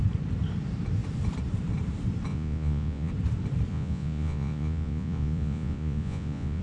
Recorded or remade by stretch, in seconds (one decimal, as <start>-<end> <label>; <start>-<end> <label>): 0.0-2.3 recorded; 2.3-3.1 remade; 3.1-3.7 recorded; 3.7-6.6 remade